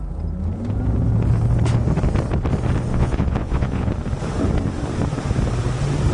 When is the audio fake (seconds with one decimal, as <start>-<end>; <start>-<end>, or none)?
2.9-3.9